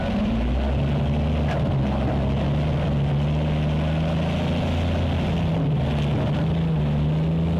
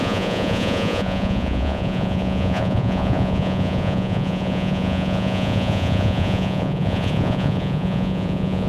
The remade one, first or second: second